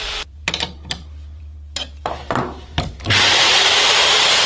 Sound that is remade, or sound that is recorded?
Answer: remade